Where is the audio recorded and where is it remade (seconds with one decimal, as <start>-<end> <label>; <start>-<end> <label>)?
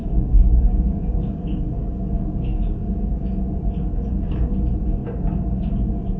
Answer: 0.0-3.1 remade; 3.1-6.2 recorded